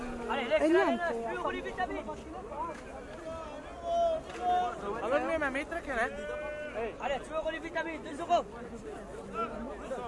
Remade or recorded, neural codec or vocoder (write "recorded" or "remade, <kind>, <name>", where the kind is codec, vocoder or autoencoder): recorded